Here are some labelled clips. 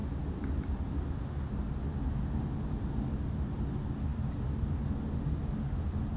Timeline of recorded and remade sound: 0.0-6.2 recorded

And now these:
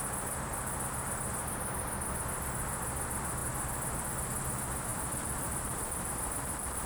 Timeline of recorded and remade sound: 0.0-4.9 recorded; 4.9-6.9 remade

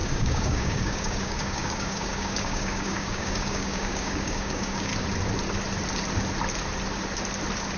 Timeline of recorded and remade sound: 0.0-4.9 remade; 4.9-7.8 recorded

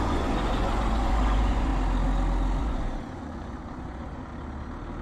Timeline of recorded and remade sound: 0.0-1.7 remade; 1.7-2.6 recorded; 2.6-4.3 remade; 4.3-5.0 recorded

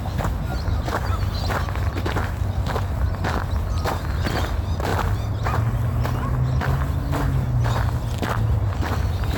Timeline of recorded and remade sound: 0.0-9.4 recorded

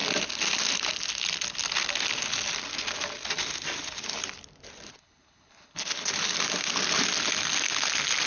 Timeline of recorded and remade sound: 0.0-4.9 recorded; 4.9-6.1 remade; 6.1-8.3 recorded

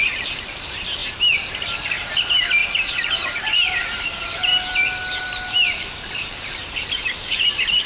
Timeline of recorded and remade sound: 0.0-1.0 remade; 1.0-1.5 recorded; 1.5-2.6 remade; 2.6-3.7 recorded; 3.7-4.5 remade; 4.5-5.2 recorded; 5.2-7.9 remade